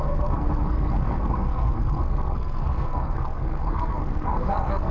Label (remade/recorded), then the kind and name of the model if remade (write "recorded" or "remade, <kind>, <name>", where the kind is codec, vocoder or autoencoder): remade, codec, SNAC